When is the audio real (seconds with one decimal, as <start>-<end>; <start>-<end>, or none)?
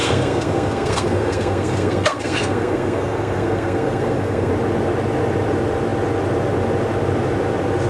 4.5-7.9